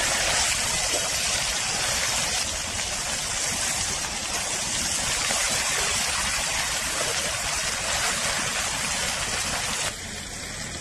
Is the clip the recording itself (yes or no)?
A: yes